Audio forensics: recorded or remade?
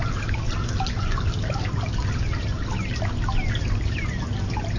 recorded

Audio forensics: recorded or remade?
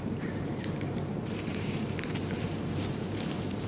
remade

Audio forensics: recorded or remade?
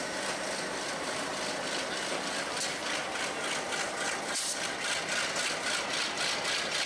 recorded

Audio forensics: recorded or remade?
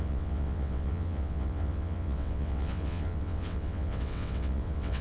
remade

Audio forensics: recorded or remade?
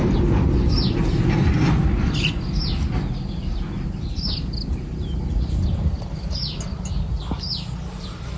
recorded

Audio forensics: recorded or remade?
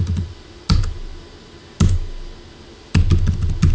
recorded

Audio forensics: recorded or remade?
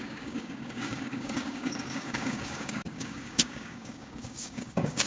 remade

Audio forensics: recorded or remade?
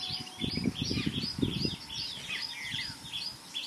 recorded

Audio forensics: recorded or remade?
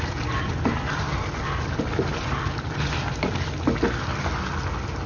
recorded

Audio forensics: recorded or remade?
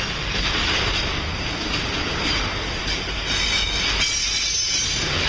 recorded